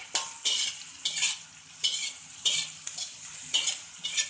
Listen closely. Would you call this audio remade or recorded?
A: recorded